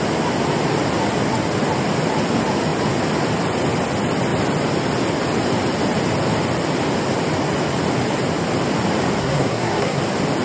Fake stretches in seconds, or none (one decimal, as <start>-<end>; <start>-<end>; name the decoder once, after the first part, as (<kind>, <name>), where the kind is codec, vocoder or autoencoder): 9.2-10.0 (codec, SNAC)